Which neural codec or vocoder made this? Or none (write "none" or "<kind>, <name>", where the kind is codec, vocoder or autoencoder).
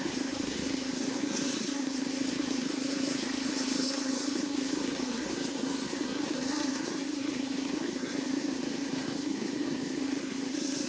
codec, SNAC